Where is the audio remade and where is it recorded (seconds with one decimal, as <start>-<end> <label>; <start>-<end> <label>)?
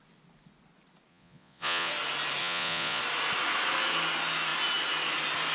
0.0-1.1 recorded; 1.1-1.9 remade; 1.9-2.4 recorded; 2.4-3.0 remade; 3.0-5.5 recorded